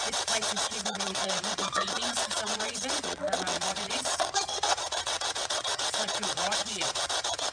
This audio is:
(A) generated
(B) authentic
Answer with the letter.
A